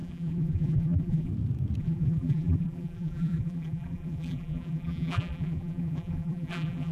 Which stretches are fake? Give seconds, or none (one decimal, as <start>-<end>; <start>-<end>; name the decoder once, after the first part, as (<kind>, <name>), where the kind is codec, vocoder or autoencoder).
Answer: 0.0-1.3 (vocoder, BigVGAN v2); 1.8-6.9